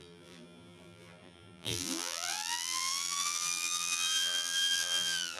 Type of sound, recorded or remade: remade